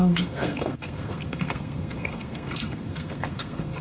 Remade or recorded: remade